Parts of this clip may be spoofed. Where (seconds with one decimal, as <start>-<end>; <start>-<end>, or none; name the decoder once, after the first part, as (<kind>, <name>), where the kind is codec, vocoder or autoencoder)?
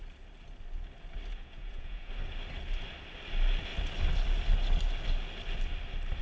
1.3-2.1 (vocoder, Vocos)